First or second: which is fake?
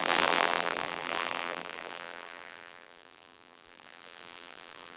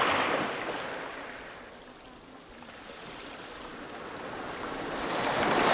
first